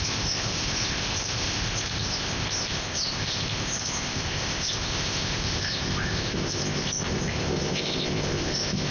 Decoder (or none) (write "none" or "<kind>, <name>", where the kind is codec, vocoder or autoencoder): codec, ZipCodec